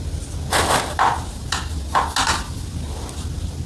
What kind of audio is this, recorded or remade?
recorded